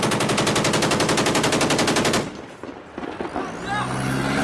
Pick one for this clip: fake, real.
real